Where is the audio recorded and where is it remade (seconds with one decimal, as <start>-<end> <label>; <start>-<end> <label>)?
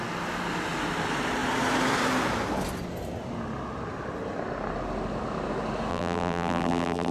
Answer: 0.0-5.9 recorded; 5.9-7.1 remade